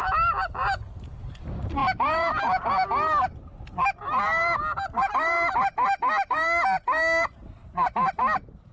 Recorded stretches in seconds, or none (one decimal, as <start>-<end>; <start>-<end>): 0.0-8.7